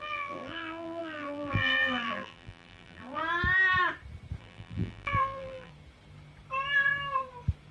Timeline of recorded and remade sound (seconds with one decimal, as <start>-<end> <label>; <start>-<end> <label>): 0.0-3.2 remade; 3.2-4.4 recorded; 4.4-5.7 remade; 5.7-7.7 recorded